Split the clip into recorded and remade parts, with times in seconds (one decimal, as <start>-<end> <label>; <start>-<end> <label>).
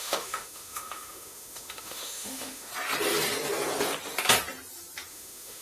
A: 0.0-2.7 remade; 2.7-5.1 recorded; 5.1-5.6 remade